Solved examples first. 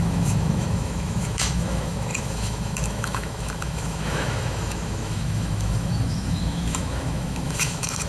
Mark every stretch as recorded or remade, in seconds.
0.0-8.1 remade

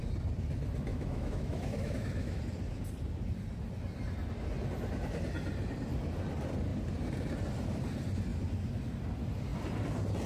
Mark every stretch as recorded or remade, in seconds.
0.0-0.9 recorded; 0.9-2.4 remade; 2.4-10.3 recorded

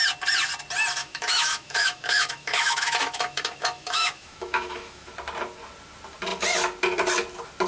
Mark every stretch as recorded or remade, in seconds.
0.0-1.0 recorded; 1.0-5.1 remade; 5.1-7.7 recorded